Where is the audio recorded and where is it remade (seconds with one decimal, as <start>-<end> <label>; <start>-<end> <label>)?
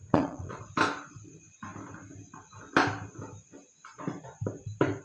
0.0-0.6 remade; 0.6-5.0 recorded